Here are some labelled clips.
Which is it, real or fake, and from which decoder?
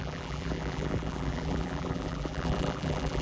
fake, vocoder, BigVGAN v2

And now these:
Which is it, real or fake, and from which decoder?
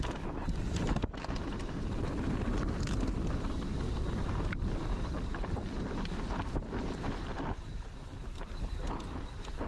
real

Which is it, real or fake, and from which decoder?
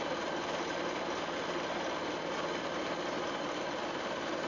real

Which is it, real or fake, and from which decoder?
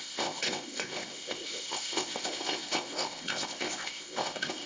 fake, codec, ZipCodec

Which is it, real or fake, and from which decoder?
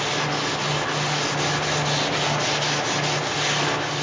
real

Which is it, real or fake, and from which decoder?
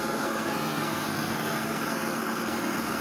fake, codec, SNAC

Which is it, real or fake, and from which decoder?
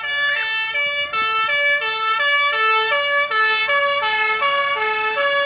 real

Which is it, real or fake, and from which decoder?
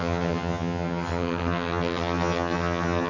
fake, vocoder, HiFi-GAN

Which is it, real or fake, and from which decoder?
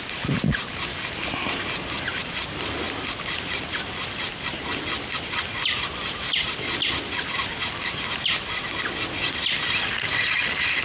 real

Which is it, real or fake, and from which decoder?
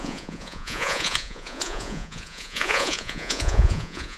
fake, vocoder, Vocos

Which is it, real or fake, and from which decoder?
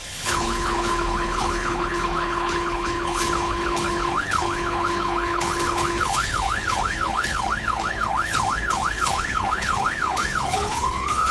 fake, codec, HILCodec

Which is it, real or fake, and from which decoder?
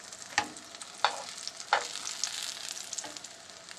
real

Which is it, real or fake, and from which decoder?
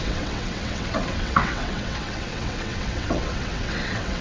fake, vocoder, WaveNeXt